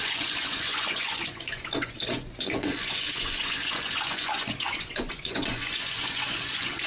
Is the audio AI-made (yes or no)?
yes